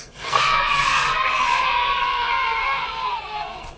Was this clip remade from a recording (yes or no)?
yes